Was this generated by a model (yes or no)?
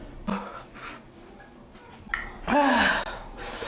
no